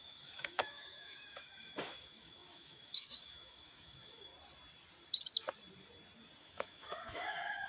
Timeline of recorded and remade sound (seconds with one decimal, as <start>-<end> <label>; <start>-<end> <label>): 0.0-4.3 remade; 4.3-6.4 recorded; 6.4-7.7 remade